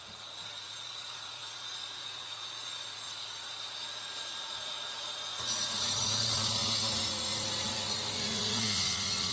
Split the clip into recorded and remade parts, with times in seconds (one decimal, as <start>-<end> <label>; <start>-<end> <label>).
0.0-9.3 remade